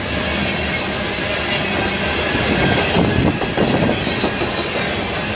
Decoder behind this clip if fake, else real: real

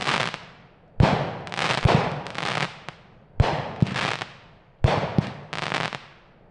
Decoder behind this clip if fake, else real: real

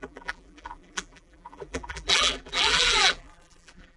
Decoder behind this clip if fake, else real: fake, vocoder, BigVGAN v2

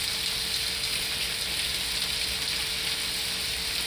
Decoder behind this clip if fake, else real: real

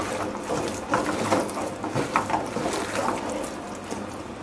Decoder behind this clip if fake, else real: real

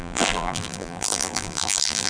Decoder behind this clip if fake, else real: fake, vocoder, BigVGAN v2